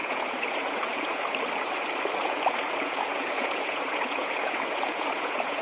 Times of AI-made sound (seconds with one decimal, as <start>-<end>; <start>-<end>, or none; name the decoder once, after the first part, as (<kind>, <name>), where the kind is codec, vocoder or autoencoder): 0.0-1.2 (vocoder, Vocos); 2.2-5.6